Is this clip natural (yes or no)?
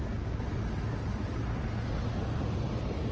yes